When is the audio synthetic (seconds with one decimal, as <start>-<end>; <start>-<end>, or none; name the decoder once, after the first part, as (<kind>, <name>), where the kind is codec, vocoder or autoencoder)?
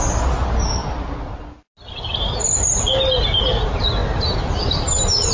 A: none